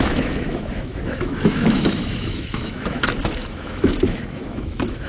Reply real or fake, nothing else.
fake